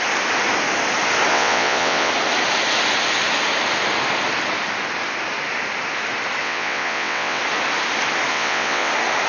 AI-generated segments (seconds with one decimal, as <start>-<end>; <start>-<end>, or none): 1.3-2.1; 6.4-7.4; 8.3-8.9